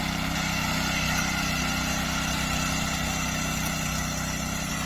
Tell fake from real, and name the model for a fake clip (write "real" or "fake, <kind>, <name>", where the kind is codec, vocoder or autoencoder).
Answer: real